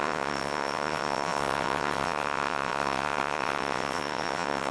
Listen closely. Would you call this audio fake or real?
fake